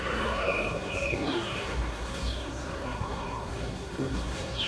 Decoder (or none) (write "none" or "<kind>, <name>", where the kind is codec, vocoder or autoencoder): codec, SNAC